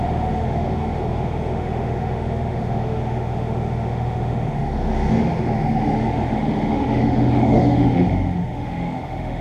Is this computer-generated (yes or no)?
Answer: yes